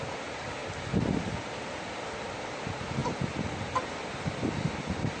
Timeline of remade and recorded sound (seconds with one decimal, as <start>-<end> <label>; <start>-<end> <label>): 0.0-5.2 recorded